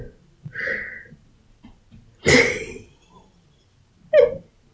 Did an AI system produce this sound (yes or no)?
no